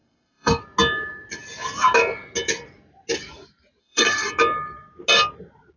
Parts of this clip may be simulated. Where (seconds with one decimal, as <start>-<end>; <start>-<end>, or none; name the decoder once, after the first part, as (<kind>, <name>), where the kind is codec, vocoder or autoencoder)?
0.0-0.6 (codec, SNAC); 3.8-4.3